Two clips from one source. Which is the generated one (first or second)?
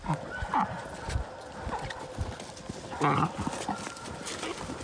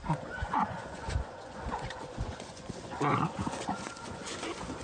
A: second